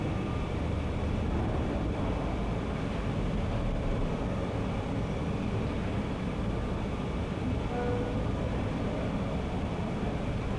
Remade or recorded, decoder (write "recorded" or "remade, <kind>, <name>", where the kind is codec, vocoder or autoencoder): recorded